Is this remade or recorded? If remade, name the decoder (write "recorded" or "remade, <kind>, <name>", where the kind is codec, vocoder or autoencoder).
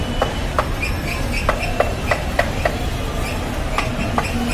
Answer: recorded